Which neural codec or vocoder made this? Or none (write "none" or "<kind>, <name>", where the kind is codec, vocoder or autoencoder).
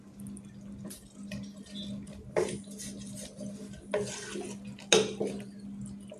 none